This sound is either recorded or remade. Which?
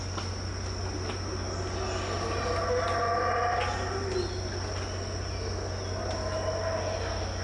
recorded